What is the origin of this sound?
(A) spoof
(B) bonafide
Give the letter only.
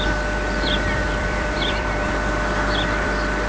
A